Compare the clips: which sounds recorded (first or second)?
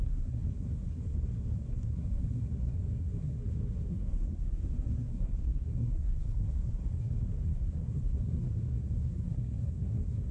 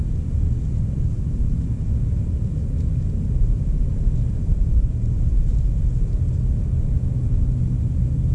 second